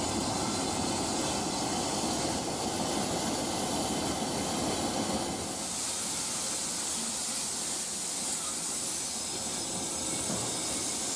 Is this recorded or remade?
recorded